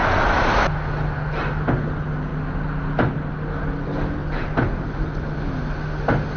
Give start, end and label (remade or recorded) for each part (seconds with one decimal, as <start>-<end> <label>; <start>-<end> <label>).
0.0-0.5 remade; 0.5-4.2 recorded; 4.2-4.8 remade; 4.8-6.4 recorded